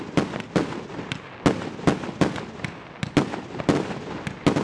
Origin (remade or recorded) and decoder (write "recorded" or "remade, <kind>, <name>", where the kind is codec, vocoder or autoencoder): recorded